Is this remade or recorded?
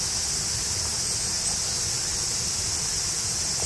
recorded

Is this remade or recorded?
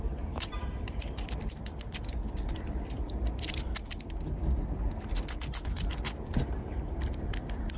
remade